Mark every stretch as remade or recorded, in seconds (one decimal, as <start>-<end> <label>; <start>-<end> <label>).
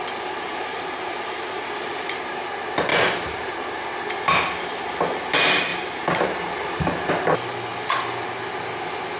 0.0-0.5 recorded; 0.5-1.9 remade; 1.9-2.9 recorded; 2.9-3.5 remade; 3.5-5.7 recorded; 5.7-7.1 remade; 7.1-9.2 recorded